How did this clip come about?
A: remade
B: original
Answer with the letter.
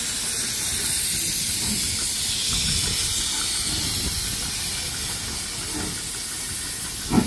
B